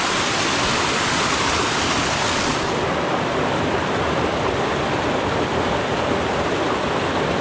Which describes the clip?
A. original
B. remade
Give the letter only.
A